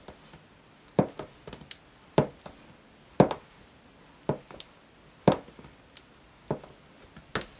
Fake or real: real